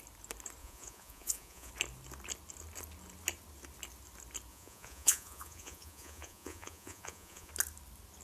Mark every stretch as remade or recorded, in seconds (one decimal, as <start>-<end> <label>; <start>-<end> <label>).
0.0-0.6 recorded; 0.6-1.7 remade; 1.7-4.5 recorded; 4.5-7.5 remade; 7.5-8.2 recorded